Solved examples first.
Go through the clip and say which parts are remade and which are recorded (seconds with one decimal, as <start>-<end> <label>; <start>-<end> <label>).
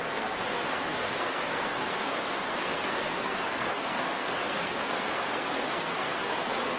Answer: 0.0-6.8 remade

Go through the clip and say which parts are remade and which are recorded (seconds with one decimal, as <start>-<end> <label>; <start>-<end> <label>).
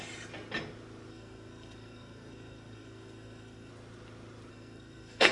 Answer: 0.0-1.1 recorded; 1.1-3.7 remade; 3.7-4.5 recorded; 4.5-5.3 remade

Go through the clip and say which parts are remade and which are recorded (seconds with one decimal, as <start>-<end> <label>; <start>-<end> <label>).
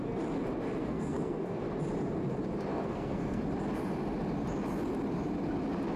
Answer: 0.0-0.8 recorded; 0.8-1.6 remade; 1.6-2.7 recorded; 2.7-3.4 remade; 3.4-6.0 recorded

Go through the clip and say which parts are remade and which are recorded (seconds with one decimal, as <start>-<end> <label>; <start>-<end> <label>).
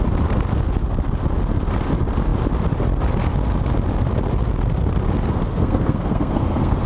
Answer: 0.0-5.5 recorded; 5.5-6.9 remade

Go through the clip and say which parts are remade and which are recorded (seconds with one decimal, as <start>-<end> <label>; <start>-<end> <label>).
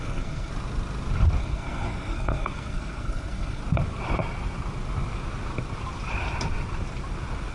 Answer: 0.0-0.5 remade; 0.5-1.4 recorded; 1.4-3.6 remade; 3.6-7.5 recorded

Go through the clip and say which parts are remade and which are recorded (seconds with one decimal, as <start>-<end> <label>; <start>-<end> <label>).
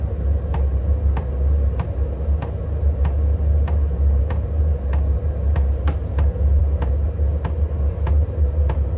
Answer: 0.0-9.0 recorded